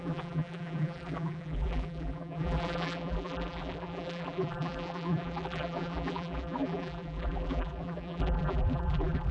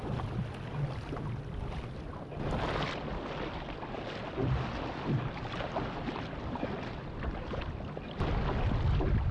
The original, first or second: second